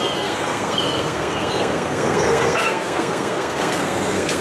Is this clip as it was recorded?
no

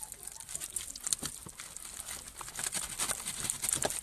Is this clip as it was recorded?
yes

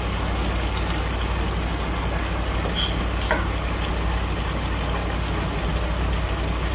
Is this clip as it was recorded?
yes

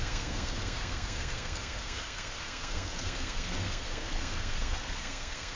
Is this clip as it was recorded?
no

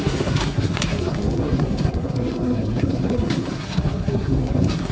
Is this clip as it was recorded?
no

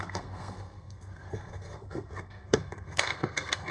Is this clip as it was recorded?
no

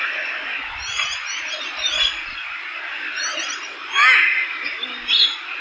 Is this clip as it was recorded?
yes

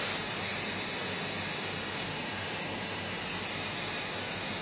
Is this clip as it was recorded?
yes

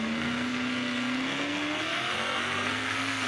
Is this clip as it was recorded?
no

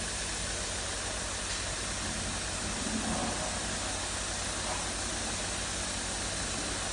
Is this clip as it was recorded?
yes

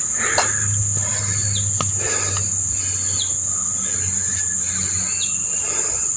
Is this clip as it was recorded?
yes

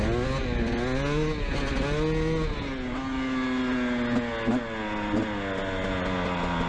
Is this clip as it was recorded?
yes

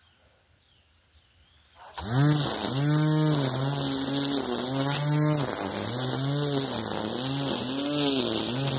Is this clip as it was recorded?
yes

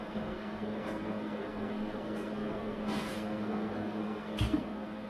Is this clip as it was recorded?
no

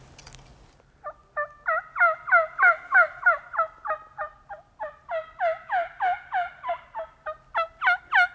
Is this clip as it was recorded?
yes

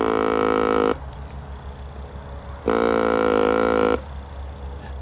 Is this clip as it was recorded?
yes